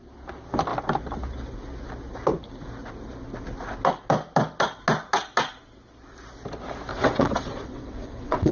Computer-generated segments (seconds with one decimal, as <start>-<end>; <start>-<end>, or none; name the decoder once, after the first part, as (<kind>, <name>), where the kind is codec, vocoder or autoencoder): 6.9-8.5 (vocoder, WaveNeXt)